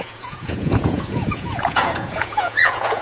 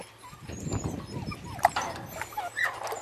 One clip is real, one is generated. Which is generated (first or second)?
first